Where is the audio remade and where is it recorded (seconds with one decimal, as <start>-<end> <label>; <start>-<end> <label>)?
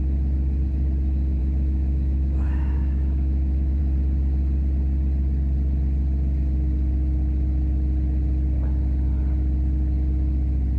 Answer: 0.0-1.4 recorded; 1.4-3.8 remade; 3.8-10.8 recorded